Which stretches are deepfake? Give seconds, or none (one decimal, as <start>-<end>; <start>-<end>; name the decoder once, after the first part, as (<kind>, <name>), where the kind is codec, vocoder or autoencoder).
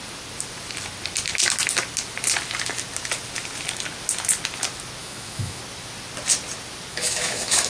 5.0-5.6 (autoencoder, DAC-VAE); 6.9-7.7